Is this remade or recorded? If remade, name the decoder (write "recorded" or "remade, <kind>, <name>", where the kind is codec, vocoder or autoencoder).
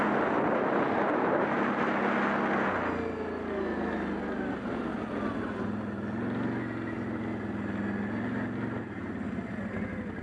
recorded